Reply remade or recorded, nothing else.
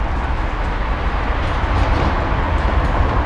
recorded